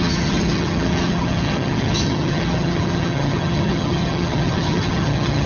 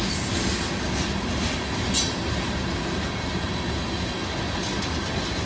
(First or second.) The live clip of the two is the second